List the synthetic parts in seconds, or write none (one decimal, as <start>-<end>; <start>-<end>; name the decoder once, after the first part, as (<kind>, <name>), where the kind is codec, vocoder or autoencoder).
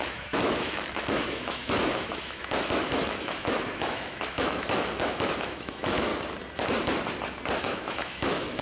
0.0-6.1 (autoencoder, DAC-VAE); 7.6-8.6